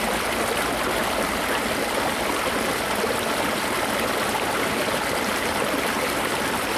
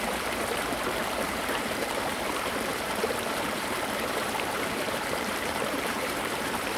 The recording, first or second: first